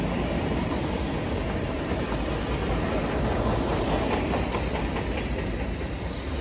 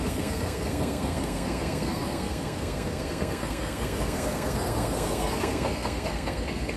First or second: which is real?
first